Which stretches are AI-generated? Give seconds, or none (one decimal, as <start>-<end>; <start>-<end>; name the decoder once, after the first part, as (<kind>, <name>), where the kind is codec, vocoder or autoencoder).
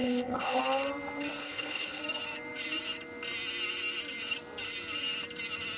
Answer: 0.0-0.6 (codec, HILCodec); 1.4-2.0